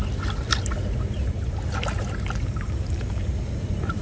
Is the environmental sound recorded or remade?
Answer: recorded